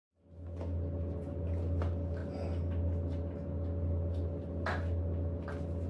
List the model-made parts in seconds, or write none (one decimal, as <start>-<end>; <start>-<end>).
none